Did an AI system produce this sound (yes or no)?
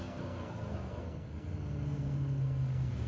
yes